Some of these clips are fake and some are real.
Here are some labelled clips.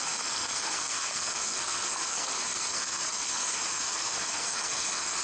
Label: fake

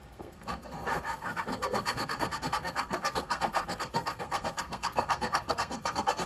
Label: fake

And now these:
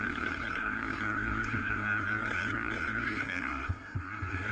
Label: fake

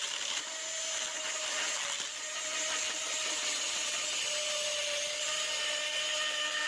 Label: real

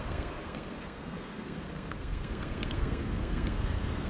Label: fake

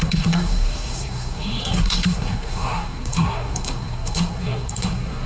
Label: fake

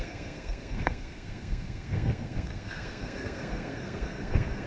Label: fake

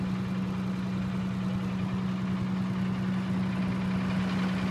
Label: real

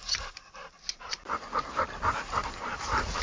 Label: real